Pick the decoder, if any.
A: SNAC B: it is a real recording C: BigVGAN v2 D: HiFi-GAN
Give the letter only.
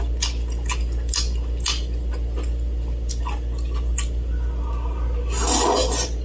B